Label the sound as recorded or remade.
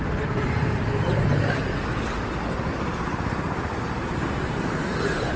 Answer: recorded